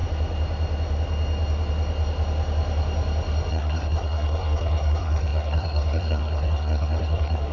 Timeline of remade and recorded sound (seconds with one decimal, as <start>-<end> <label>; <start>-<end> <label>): 0.0-3.5 recorded; 3.5-7.5 remade